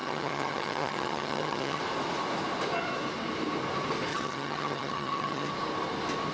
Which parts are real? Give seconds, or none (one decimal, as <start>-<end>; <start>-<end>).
1.8-4.1; 5.5-6.3